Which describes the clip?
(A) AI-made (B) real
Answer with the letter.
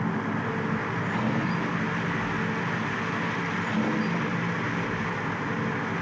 B